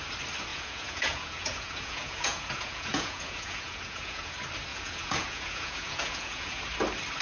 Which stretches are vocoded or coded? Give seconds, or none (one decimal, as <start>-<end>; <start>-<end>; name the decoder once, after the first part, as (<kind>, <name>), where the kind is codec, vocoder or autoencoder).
0.5-4.3 (vocoder, Vocos); 4.7-6.6